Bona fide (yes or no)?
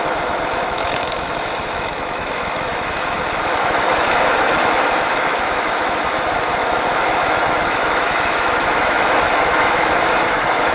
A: no